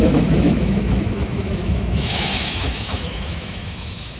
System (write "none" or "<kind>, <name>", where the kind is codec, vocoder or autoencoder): autoencoder, DAC-VAE